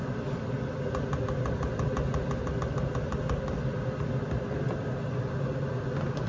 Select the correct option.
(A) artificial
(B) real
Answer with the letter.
B